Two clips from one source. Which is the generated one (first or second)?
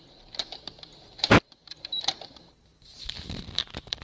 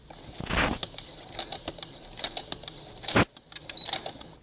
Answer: first